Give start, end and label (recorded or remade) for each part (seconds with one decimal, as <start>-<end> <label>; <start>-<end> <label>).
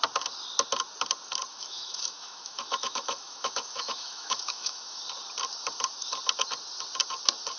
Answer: 0.0-1.5 recorded; 1.5-5.0 remade; 5.0-7.6 recorded